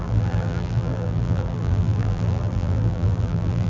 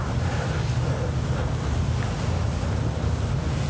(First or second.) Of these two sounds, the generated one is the first